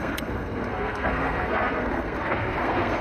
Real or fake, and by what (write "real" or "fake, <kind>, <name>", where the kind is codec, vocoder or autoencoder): fake, codec, SNAC